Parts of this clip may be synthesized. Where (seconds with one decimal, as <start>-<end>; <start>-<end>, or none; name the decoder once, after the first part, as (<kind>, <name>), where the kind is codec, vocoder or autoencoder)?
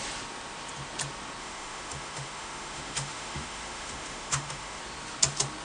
1.4-4.8 (autoencoder, DAC-VAE)